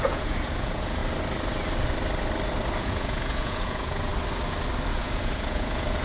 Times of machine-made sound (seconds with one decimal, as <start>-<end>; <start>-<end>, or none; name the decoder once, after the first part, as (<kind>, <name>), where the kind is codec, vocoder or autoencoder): 0.0-1.0 (vocoder, Vocos); 2.8-4.1; 4.9-6.0